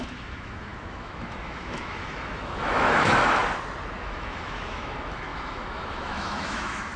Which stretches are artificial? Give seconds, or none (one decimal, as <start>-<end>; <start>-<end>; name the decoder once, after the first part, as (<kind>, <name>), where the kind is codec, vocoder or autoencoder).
0.0-3.4 (autoencoder, DAC-VAE); 4.0-7.0

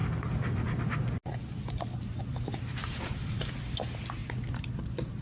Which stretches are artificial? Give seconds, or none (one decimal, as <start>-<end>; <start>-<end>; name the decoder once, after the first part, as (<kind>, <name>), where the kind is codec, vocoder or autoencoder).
1.4-2.2 (vocoder, BigVGAN v2); 2.8-3.5

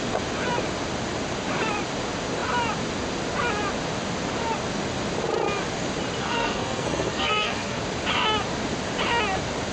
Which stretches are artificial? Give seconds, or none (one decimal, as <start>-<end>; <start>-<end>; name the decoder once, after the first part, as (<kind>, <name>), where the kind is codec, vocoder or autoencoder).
6.2-7.8 (codec, SNAC)

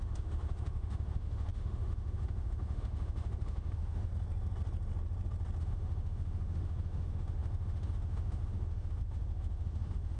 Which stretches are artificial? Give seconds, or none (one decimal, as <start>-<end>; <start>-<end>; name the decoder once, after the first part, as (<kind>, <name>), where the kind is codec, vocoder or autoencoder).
0.0-4.1 (autoencoder, DAC-VAE); 5.6-10.2

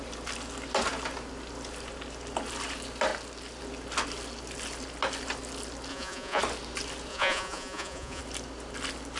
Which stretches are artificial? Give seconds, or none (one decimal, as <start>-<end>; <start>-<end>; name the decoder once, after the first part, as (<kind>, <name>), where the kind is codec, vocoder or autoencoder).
5.9-6.4 (vocoder, Vocos); 7.1-8.2

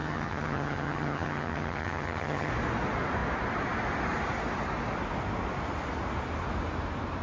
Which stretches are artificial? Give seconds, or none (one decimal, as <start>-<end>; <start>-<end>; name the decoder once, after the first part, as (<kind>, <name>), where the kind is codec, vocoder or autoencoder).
0.0-2.5 (vocoder, HiFi-GAN)

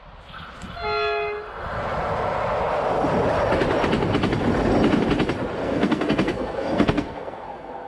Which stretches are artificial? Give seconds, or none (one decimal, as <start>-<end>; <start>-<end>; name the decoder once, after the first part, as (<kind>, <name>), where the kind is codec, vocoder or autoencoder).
5.6-7.9 (codec, SNAC)

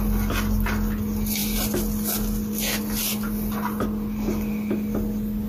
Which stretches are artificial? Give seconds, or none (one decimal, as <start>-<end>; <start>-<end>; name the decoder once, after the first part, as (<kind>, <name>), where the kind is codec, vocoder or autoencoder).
none